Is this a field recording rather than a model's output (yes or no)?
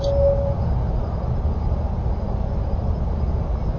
yes